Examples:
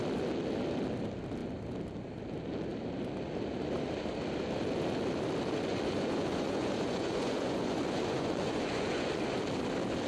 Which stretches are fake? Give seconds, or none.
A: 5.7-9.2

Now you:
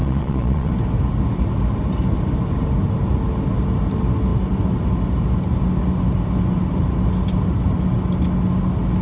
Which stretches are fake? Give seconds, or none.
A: 0.0-0.7

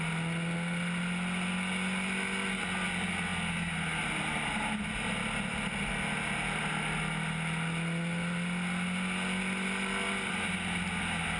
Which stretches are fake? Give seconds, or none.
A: none

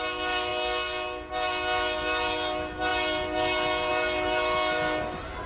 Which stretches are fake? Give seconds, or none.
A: none

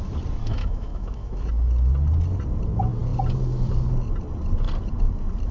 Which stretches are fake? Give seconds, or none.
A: 0.4-1.4

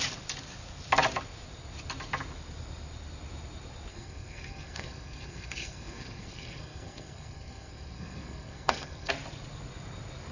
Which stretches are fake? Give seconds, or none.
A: 3.9-9.1